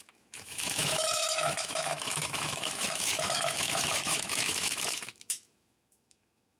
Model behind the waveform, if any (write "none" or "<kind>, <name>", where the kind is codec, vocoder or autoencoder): autoencoder, DAC-VAE